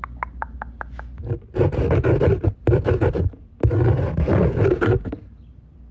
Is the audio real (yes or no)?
yes